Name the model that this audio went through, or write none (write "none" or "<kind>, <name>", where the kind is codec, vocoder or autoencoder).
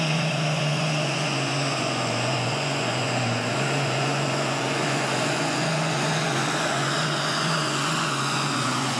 vocoder, Vocos